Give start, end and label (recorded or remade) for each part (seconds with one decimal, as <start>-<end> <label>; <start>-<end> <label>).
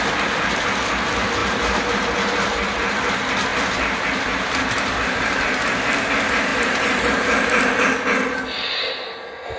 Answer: 0.0-1.4 recorded; 1.4-2.3 remade; 2.3-3.5 recorded; 3.5-5.4 remade; 5.4-6.5 recorded; 6.5-7.9 remade; 7.9-9.6 recorded